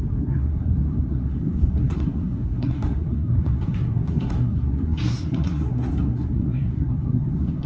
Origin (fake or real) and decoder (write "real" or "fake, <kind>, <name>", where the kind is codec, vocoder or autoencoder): fake, codec, SNAC